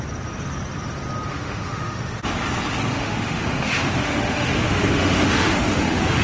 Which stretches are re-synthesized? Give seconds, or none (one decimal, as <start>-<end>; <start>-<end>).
1.3-2.2; 2.9-6.2